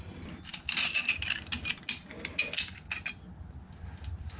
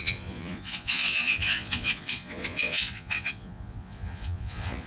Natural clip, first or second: first